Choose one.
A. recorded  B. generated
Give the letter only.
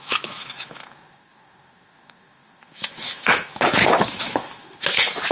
B